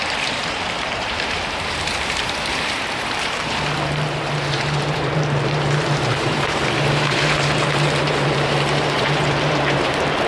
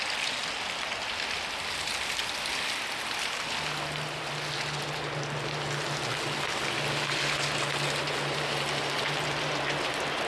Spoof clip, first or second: first